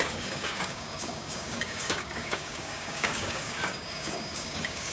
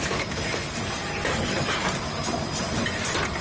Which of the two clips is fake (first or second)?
first